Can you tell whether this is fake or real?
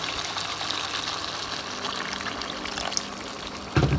real